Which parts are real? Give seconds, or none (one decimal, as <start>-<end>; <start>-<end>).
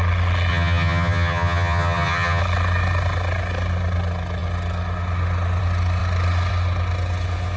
0.0-0.5; 2.4-7.6